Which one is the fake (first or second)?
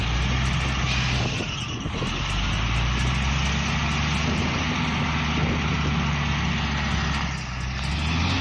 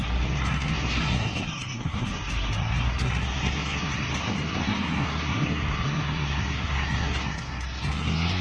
second